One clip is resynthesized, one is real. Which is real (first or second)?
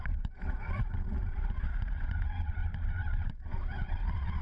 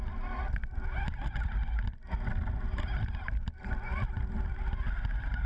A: second